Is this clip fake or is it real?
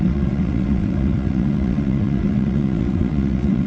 fake